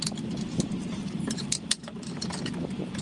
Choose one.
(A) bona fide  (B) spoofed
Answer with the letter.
B